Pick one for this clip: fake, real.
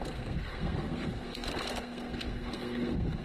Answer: fake